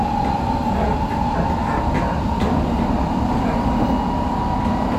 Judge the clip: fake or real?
real